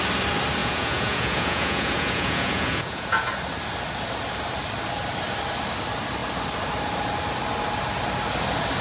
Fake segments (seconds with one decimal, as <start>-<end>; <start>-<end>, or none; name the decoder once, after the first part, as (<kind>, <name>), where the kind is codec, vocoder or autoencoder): 0.6-3.3 (vocoder, Vocos)